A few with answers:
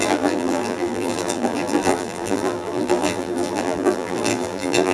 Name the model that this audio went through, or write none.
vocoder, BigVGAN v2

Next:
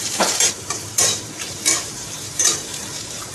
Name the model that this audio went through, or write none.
vocoder, BigVGAN v2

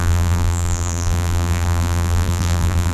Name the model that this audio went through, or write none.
vocoder, BigVGAN v2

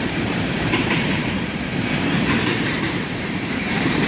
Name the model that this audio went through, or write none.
vocoder, BigVGAN v2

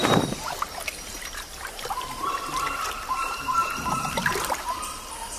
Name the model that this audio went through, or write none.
vocoder, BigVGAN v2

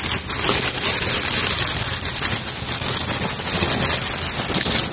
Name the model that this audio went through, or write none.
none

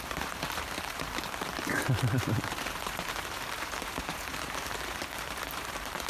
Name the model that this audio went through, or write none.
vocoder, BigVGAN v2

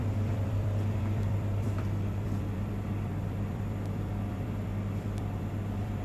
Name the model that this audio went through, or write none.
vocoder, BigVGAN v2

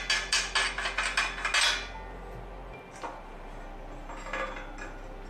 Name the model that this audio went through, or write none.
none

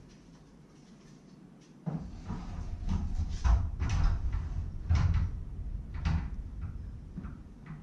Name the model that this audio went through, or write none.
vocoder, BigVGAN v2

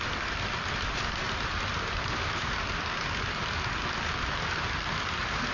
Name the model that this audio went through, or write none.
vocoder, BigVGAN v2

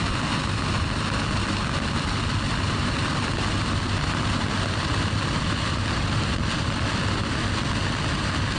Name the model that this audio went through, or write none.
none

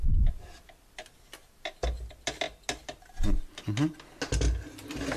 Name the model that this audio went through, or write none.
none